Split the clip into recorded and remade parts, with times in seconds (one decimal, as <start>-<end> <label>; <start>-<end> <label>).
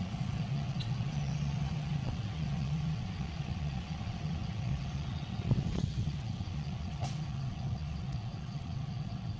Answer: 0.0-9.4 remade